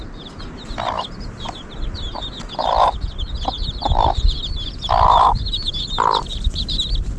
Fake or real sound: real